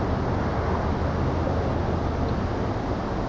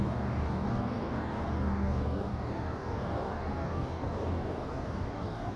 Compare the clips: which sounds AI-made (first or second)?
second